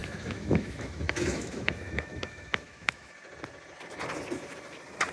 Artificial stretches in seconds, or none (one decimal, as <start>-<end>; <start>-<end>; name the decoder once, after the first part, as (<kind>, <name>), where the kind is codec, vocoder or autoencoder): 0.0-3.1 (autoencoder, DAC-VAE)